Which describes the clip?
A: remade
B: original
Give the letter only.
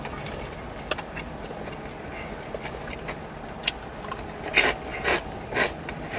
B